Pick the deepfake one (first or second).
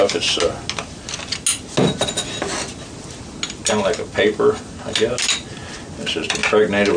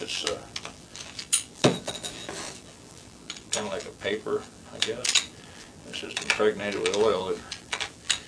second